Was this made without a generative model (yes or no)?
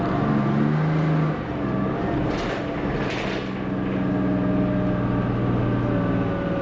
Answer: yes